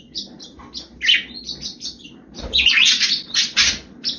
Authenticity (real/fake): real